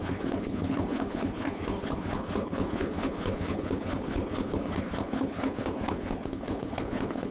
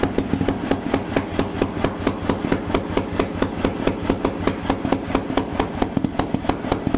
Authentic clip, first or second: second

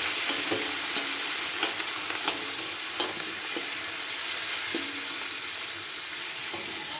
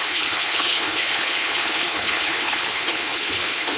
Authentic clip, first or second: first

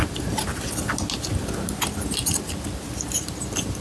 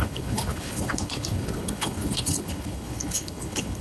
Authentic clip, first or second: first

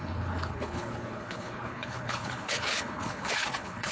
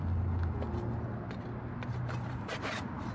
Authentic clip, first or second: second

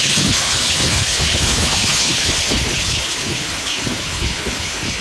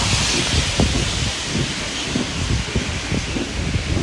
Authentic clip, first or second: second